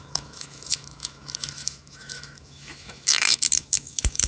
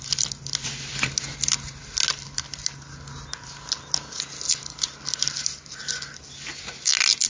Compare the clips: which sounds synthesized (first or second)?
first